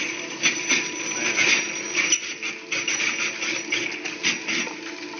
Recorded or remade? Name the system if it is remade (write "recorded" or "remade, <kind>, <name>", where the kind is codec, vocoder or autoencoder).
recorded